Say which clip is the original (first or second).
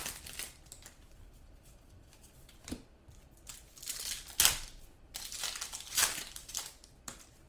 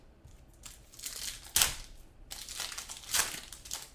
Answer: second